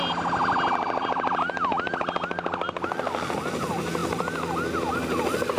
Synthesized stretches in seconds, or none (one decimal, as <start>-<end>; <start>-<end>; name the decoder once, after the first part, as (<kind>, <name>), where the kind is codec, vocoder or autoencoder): 0.4-1.9 (vocoder, BigVGAN v2)